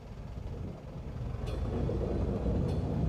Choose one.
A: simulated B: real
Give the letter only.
B